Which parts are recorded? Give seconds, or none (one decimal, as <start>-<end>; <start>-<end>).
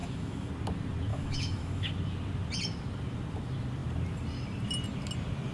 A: 0.5-1.1; 1.9-5.5